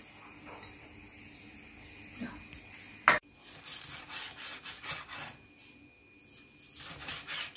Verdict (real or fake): real